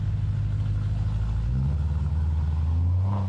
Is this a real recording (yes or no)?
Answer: yes